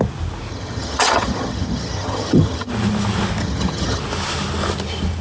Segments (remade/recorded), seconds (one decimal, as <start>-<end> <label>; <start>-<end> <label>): 0.0-0.5 recorded; 0.5-2.7 remade; 2.7-3.4 recorded; 3.4-4.0 remade; 4.0-5.2 recorded